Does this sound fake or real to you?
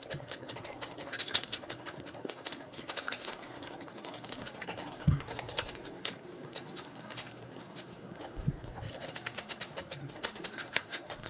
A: fake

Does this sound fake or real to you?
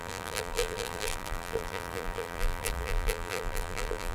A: fake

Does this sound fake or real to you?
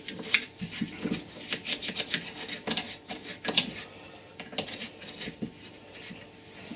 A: real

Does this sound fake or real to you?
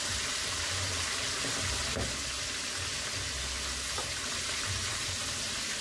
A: real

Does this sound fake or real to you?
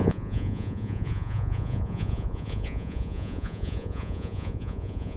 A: fake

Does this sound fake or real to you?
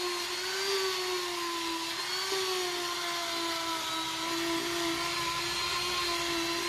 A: real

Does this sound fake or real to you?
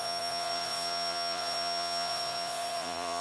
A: fake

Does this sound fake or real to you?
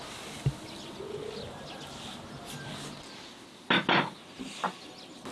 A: real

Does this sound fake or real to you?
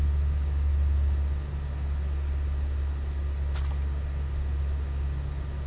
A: real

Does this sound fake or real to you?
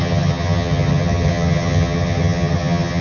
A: fake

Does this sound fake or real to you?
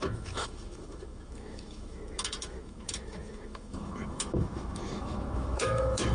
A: fake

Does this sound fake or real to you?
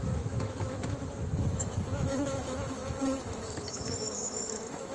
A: fake